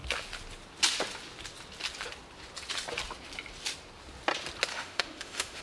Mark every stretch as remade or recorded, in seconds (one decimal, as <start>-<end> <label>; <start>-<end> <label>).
0.0-4.7 recorded; 4.7-5.6 remade